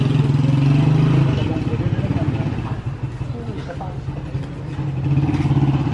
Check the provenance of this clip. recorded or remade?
recorded